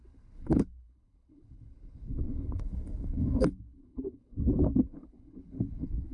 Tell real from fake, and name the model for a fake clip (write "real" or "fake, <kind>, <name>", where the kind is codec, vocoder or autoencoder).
fake, codec, HILCodec